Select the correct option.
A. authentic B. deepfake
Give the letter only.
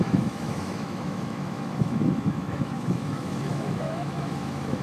B